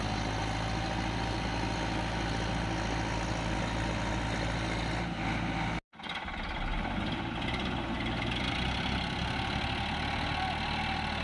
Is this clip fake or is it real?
real